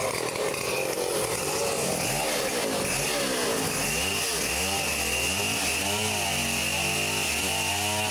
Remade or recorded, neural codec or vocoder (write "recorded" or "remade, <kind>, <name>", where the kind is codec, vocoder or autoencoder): recorded